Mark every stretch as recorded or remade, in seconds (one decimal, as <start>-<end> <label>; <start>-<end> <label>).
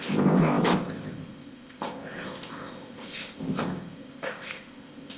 0.0-5.2 remade